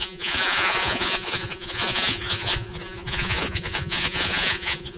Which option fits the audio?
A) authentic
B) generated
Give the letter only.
B